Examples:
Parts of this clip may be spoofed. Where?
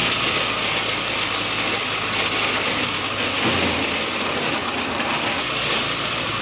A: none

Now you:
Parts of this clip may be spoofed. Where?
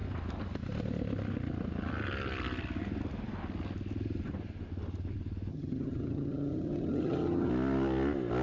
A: 5.5-7.5 (vocoder, HiFi-GAN)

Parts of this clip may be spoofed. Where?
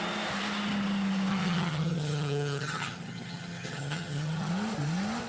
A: 1.3-4.5 (vocoder, HiFi-GAN)